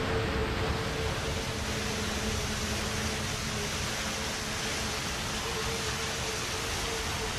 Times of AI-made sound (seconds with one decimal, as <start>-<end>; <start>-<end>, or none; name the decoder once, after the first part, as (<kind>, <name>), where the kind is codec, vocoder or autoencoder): none